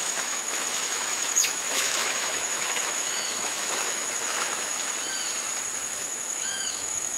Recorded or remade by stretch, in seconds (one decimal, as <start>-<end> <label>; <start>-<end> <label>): 0.0-4.9 remade; 4.9-5.9 recorded; 5.9-7.2 remade